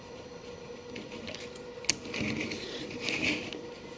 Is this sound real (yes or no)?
yes